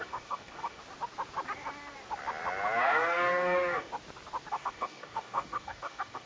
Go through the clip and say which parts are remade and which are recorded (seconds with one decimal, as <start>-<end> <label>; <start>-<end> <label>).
0.0-0.8 remade; 0.8-2.8 recorded; 2.8-3.9 remade; 3.9-4.5 recorded; 4.5-6.3 remade